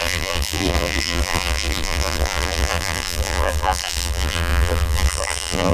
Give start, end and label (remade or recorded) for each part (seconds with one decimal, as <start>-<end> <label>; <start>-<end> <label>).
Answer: 0.0-5.7 remade